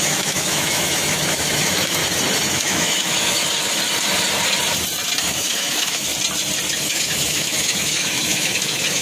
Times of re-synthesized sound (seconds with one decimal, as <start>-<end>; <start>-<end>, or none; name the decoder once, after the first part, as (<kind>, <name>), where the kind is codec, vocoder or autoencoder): 0.0-2.0 (autoencoder, DAC-VAE); 2.5-3.4; 5.2-6.1; 6.8-9.0